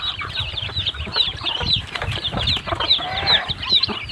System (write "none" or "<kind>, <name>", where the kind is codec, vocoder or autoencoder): vocoder, BigVGAN v2